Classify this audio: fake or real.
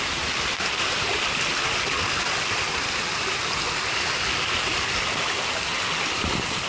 real